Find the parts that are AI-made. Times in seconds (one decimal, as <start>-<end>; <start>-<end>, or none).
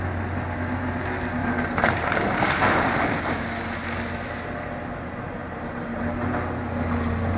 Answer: 1.4-3.2; 5.4-6.0